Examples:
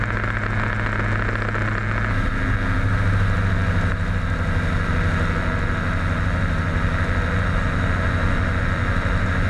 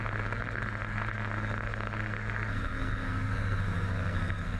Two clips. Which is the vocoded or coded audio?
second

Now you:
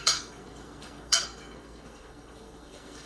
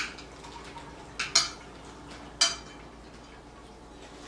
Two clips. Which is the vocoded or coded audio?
first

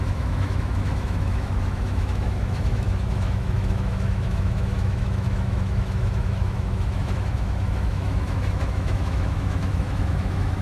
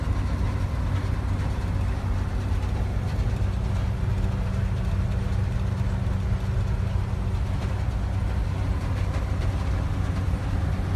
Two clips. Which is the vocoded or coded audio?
first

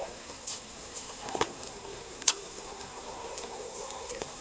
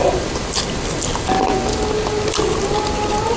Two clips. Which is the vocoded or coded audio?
first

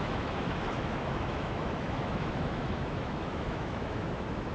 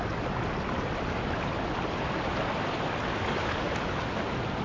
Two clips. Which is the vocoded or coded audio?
first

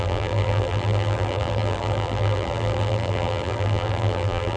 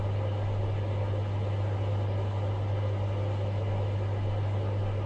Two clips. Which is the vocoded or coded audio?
first